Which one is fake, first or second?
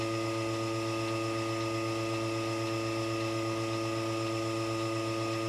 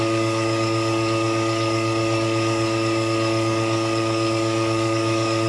second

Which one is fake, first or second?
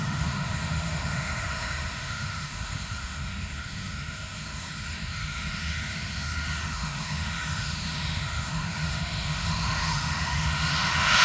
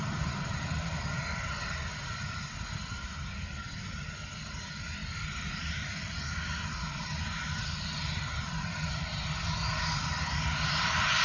first